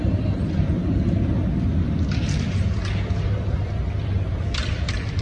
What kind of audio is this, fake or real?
real